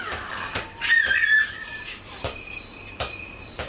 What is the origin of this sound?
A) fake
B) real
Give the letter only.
A